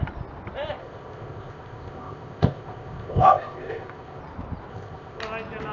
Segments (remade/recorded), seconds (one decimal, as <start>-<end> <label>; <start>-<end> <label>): 0.0-0.8 recorded; 0.8-4.2 remade; 4.2-4.7 recorded; 4.7-5.2 remade; 5.2-5.7 recorded